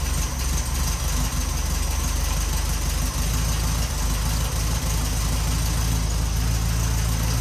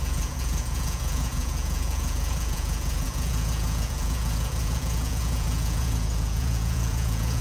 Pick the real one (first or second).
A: first